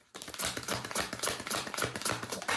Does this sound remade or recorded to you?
remade